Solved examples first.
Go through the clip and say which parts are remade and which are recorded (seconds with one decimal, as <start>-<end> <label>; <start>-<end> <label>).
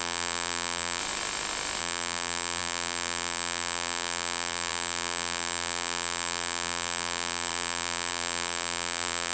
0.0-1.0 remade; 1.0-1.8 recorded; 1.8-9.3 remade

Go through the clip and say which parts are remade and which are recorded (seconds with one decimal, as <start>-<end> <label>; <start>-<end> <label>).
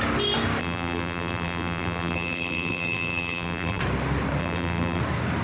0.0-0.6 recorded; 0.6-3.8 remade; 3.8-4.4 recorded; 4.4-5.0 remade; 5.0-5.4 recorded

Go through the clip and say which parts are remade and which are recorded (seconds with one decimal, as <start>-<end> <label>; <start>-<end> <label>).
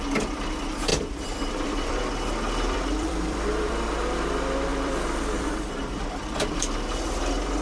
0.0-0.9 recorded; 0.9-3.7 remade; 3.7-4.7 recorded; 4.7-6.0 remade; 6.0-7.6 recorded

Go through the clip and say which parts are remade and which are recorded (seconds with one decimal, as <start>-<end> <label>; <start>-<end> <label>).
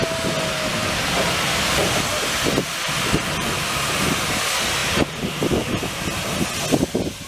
0.0-0.7 recorded; 0.7-2.0 remade; 2.0-7.3 recorded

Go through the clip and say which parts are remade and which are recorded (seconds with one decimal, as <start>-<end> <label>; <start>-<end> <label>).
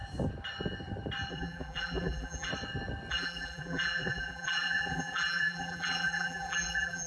0.0-1.3 recorded; 1.3-2.5 remade; 2.5-3.1 recorded; 3.1-7.1 remade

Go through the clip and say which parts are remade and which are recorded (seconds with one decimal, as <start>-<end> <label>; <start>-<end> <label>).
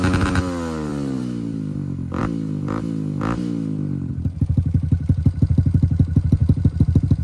0.0-0.9 recorded; 0.9-2.2 remade; 2.2-7.2 recorded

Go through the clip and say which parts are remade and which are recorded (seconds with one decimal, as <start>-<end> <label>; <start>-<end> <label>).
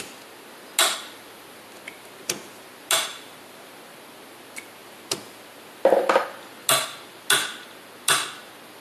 0.0-0.8 recorded; 0.8-1.6 remade; 1.6-8.8 recorded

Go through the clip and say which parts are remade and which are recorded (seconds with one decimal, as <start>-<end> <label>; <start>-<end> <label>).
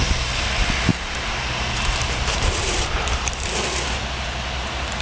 0.0-0.9 recorded; 0.9-3.5 remade; 3.5-5.0 recorded